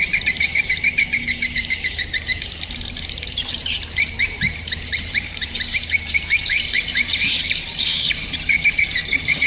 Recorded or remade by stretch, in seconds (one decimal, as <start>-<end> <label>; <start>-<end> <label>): 0.0-1.0 remade; 1.0-1.5 recorded; 1.5-9.5 remade